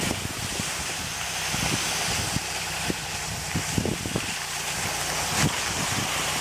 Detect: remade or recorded recorded